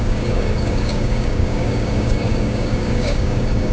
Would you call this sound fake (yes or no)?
yes